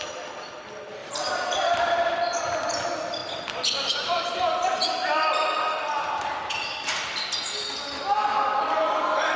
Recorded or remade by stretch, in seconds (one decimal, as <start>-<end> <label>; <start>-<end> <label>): 0.0-1.0 recorded; 1.0-2.2 remade; 2.2-9.4 recorded

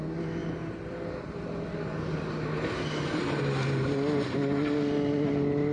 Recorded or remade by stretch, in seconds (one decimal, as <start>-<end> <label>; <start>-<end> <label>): 0.0-0.4 recorded; 0.4-3.4 remade; 3.4-5.7 recorded

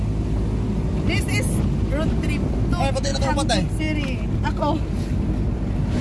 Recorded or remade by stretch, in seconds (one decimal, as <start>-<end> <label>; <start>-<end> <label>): 0.0-6.0 recorded

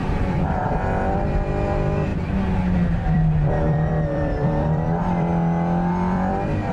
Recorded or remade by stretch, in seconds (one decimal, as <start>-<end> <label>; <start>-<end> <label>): 0.0-0.6 remade; 0.6-1.3 recorded; 1.3-5.3 remade; 5.3-5.9 recorded; 5.9-6.7 remade

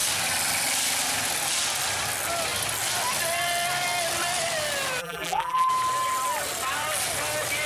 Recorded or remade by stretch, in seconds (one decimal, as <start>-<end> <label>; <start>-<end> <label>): 0.0-5.0 recorded; 5.0-5.7 remade; 5.7-7.7 recorded

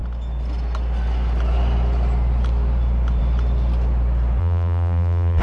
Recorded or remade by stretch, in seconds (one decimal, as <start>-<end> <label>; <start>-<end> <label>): 0.0-4.4 recorded; 4.4-5.4 remade

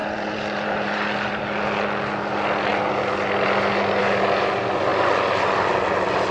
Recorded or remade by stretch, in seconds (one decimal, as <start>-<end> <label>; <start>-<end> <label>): 0.0-1.4 remade; 1.4-6.3 recorded

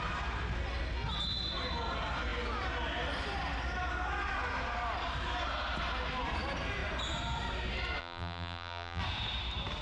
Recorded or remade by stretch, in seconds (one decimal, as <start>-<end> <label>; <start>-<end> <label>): 0.0-8.0 recorded; 8.0-9.0 remade; 9.0-9.8 recorded